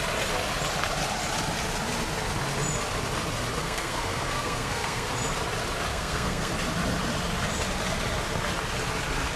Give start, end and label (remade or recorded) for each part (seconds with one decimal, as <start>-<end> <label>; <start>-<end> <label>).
0.0-3.6 recorded; 3.6-5.1 remade; 5.1-5.9 recorded; 5.9-6.5 remade; 6.5-9.4 recorded